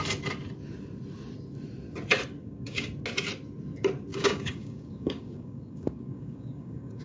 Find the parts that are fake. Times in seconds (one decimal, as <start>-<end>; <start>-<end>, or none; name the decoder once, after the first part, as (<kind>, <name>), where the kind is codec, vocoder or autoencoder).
2.4-2.9 (codec, DAC); 4.1-7.0